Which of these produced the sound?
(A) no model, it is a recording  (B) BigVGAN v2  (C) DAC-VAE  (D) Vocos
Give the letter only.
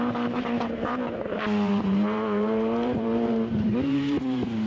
B